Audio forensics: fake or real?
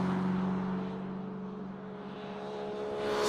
real